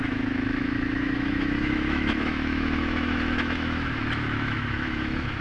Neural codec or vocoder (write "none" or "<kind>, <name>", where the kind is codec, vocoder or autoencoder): autoencoder, DAC-VAE